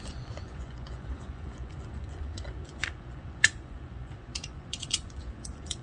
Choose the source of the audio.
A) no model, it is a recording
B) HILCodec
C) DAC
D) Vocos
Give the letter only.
D